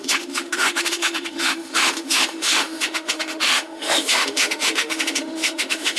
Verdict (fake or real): fake